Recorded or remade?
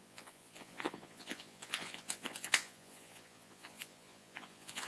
remade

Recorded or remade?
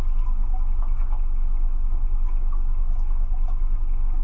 recorded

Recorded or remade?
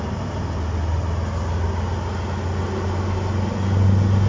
recorded